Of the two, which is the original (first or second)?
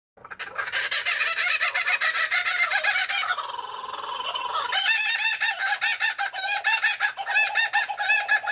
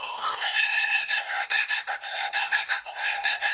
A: first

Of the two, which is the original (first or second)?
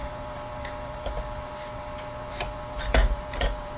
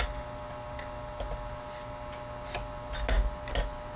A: second